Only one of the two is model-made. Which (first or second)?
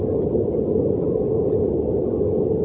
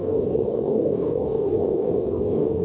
second